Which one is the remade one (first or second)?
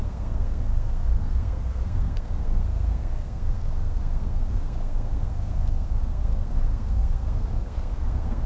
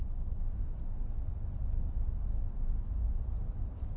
first